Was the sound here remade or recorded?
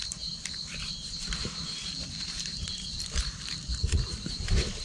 remade